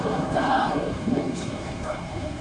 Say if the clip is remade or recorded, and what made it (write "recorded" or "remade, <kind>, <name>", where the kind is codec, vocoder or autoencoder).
remade, codec, SNAC